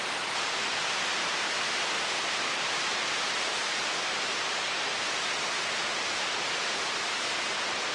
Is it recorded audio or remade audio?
remade